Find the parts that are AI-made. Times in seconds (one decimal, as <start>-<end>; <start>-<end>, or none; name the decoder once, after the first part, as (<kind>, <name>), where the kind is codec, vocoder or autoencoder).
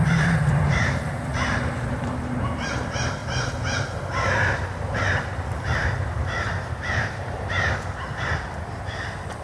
0.0-1.3 (vocoder, BigVGAN v2); 1.8-3.2; 6.2-9.4